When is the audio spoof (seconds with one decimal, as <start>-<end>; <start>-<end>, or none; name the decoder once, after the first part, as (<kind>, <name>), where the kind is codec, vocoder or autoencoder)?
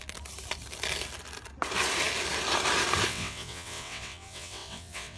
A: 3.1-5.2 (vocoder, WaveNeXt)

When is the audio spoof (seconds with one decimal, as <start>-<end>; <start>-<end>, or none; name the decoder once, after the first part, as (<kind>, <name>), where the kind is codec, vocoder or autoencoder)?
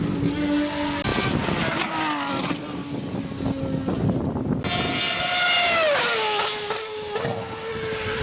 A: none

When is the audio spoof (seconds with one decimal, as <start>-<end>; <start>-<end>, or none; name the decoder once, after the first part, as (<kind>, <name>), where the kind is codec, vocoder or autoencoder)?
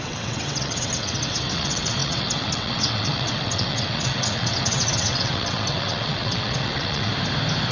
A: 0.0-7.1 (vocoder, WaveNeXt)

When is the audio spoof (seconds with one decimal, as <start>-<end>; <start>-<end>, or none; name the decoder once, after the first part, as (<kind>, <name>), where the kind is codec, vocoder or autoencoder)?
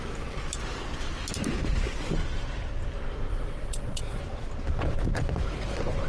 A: 3.3-4.2 (vocoder, WaveNeXt)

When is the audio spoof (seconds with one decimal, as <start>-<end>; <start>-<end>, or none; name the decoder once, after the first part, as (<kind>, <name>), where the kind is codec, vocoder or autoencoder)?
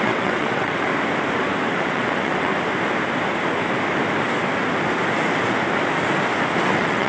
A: 0.0-0.9 (vocoder, WaveNeXt); 1.8-2.5; 6.6-7.1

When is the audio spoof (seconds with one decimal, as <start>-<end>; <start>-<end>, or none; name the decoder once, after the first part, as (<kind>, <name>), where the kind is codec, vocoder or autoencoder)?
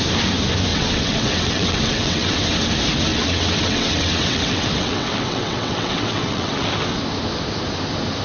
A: 0.7-2.7 (vocoder, WaveNeXt); 3.1-6.7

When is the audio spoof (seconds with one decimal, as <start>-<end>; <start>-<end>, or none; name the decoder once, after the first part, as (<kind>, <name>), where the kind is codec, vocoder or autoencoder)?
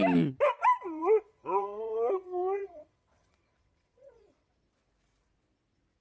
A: 1.0-4.5 (vocoder, WaveNeXt)